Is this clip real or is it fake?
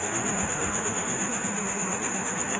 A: fake